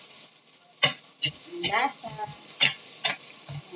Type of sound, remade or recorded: recorded